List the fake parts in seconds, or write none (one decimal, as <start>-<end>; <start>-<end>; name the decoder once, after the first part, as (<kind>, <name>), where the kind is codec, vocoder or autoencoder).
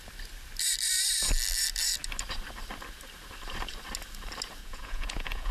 4.6-5.5 (vocoder, Vocos)